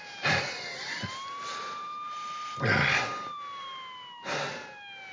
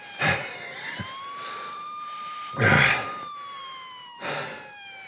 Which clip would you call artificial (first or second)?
second